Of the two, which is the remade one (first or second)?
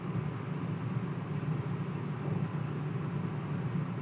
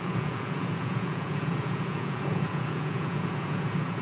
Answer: second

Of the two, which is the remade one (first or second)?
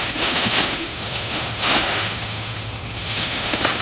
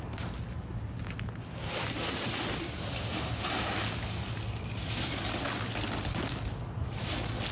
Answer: first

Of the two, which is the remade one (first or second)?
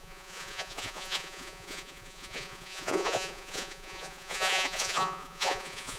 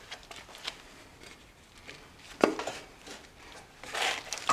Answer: first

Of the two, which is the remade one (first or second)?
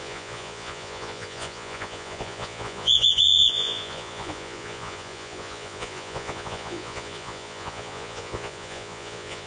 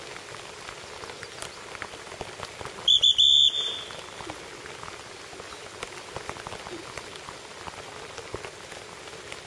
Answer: first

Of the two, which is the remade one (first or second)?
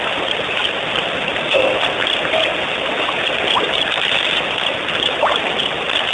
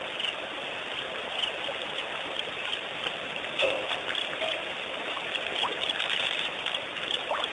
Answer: second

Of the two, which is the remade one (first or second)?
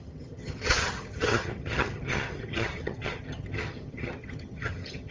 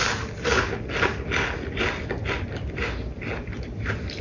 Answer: first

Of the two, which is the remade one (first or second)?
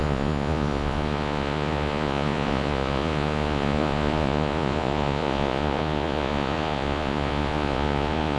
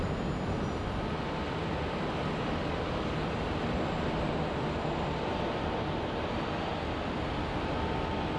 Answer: first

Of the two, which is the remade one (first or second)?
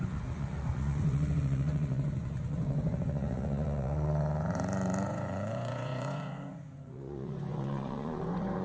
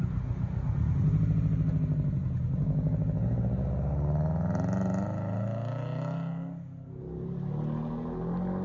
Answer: first